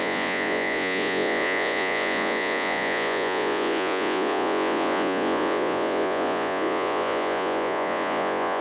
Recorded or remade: remade